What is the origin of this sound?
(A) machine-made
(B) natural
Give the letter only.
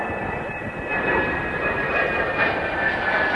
B